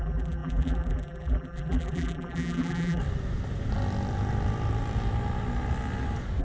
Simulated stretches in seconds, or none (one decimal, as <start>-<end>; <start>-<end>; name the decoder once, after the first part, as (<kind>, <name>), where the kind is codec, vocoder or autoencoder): 0.0-3.0 (vocoder, BigVGAN v2)